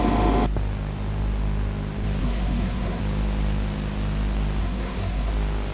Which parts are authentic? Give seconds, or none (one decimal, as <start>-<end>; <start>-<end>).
0.0-2.2; 3.0-4.6; 5.3-5.7